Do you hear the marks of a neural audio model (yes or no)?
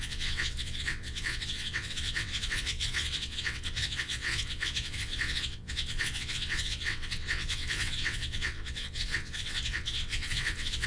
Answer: yes